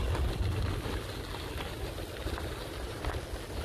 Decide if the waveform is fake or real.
real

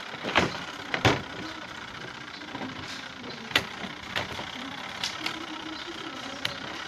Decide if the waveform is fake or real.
fake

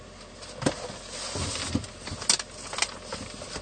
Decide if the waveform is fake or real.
real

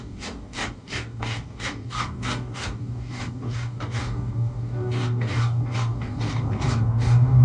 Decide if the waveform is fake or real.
fake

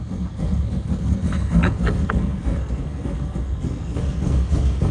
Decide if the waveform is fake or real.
fake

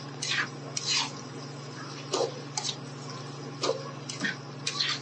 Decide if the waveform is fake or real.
real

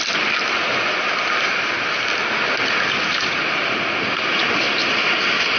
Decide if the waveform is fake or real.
real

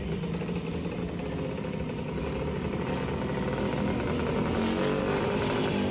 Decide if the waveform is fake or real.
real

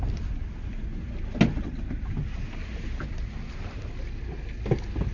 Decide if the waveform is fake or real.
real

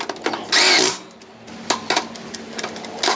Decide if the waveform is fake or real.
real